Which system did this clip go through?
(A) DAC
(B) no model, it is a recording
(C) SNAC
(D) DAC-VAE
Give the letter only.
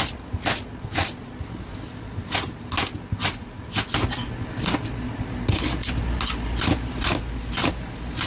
B